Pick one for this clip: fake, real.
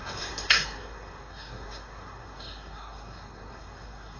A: fake